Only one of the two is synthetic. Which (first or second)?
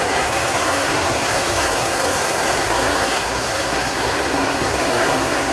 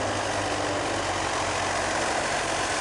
first